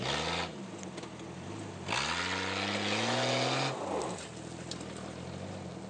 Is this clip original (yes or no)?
yes